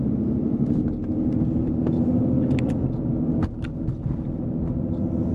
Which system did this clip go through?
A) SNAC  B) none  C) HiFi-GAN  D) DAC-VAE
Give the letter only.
B